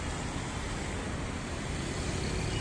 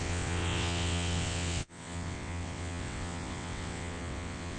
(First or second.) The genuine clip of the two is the first